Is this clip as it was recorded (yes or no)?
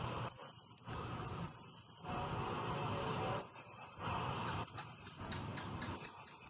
no